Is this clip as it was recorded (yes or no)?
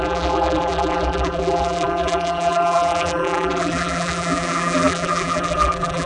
no